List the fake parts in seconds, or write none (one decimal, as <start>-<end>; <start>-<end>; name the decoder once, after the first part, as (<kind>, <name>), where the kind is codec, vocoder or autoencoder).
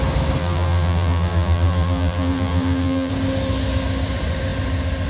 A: 0.4-3.1 (vocoder, BigVGAN v2)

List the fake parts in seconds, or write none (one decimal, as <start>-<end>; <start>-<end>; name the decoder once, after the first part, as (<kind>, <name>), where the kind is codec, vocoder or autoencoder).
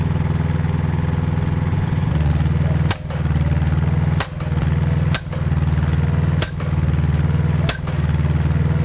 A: 1.7-2.3 (vocoder, Vocos)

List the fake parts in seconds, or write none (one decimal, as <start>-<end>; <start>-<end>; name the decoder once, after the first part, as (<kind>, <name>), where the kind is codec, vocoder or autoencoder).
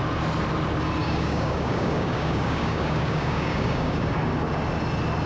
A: 1.0-4.2 (codec, DAC)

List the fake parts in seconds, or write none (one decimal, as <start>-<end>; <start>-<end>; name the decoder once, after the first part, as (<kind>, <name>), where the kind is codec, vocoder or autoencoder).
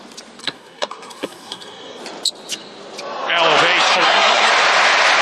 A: 0.4-2.0 (codec, SNAC); 3.9-4.5